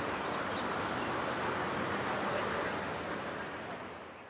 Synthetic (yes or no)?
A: no